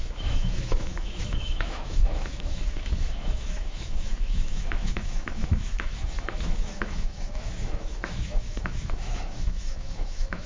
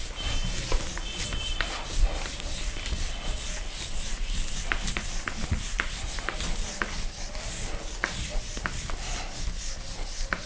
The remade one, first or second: first